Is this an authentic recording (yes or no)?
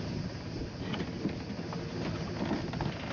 yes